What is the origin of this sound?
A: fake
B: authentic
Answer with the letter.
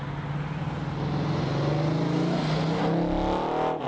B